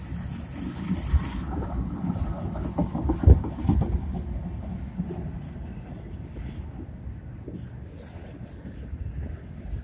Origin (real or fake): real